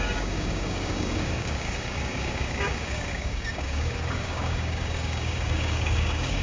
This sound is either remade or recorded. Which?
remade